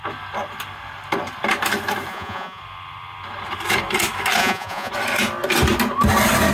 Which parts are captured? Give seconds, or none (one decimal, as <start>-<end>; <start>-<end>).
0.0-2.1; 2.6-4.4; 4.9-6.5